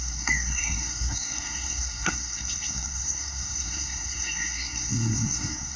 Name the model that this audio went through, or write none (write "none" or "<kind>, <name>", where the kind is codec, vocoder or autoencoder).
codec, SNAC